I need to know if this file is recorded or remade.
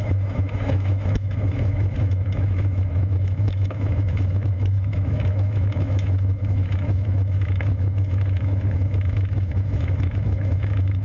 remade